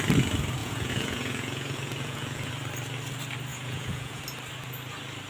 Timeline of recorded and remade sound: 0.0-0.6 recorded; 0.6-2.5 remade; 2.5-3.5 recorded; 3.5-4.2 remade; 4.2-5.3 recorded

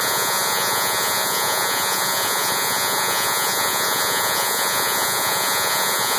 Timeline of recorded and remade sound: 0.0-6.2 remade

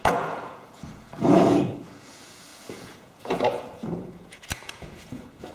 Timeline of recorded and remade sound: 0.0-5.5 remade

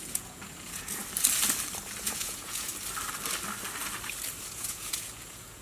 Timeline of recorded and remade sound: 0.0-1.0 remade; 1.0-2.0 recorded; 2.0-2.7 remade; 2.7-4.5 recorded; 4.5-5.6 remade